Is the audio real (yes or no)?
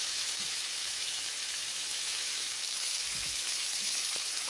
no